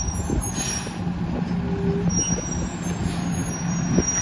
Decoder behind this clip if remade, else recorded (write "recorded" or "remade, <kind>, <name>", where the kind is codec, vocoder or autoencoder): recorded